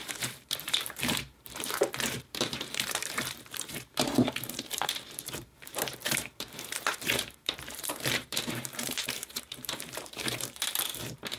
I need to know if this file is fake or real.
fake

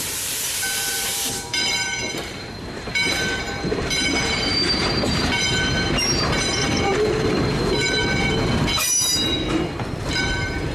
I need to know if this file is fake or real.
fake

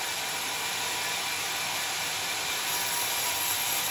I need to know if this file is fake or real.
fake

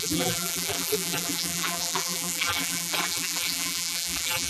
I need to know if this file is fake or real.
fake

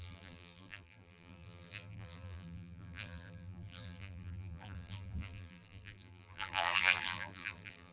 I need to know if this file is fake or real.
fake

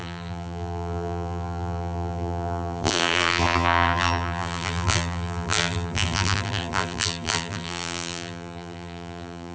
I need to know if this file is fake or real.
fake